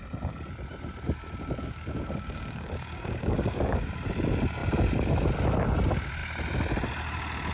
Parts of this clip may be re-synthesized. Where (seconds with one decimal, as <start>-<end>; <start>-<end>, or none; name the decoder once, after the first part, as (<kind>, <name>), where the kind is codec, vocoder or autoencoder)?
1.6-3.9 (codec, DAC)